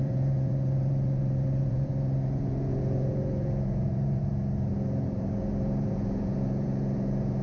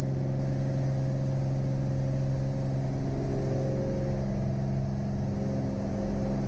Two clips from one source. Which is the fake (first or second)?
first